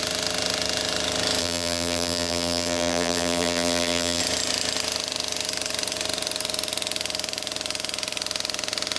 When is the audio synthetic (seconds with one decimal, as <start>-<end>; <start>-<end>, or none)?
1.4-4.2